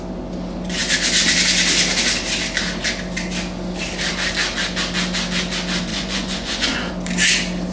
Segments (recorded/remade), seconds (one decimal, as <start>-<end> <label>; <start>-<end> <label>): 0.0-5.9 recorded; 5.9-6.9 remade; 6.9-7.7 recorded